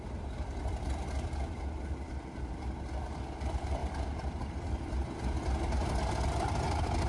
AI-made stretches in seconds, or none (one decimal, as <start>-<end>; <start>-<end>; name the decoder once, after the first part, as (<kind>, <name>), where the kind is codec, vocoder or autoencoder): 0.0-5.0 (vocoder, BigVGAN v2); 6.5-7.1